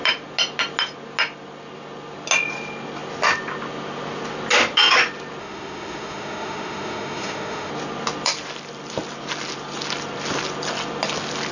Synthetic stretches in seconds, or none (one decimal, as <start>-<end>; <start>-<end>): 5.4-7.7